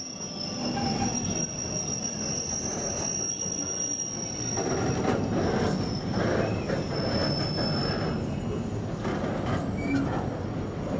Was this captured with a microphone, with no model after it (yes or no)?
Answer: yes